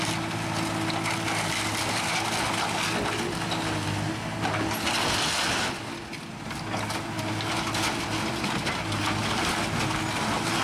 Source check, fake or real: real